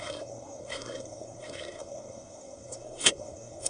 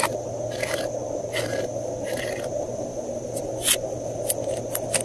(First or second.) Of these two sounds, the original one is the second